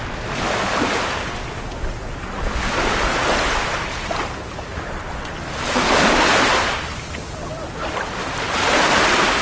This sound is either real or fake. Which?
real